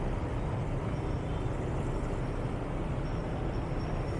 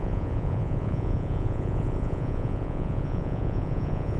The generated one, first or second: second